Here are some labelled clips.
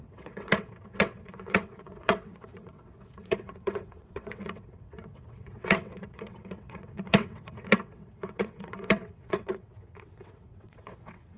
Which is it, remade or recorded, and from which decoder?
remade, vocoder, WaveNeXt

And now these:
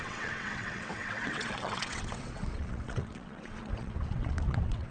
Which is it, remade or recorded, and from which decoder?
remade, vocoder, WaveNeXt